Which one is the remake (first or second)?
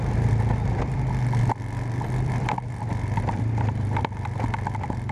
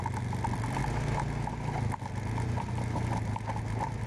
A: first